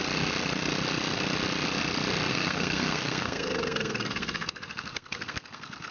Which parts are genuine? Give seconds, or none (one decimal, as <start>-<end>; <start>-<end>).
0.0-2.3